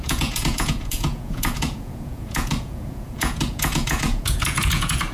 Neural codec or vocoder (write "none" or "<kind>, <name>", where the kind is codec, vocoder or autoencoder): vocoder, Vocos